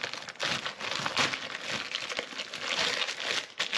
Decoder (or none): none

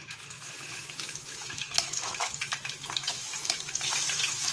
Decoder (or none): autoencoder, DAC-VAE